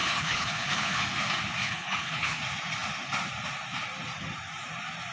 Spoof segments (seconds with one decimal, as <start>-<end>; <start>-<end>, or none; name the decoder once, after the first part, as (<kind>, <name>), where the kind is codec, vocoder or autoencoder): 0.0-1.0 (codec, HILCodec); 1.6-2.4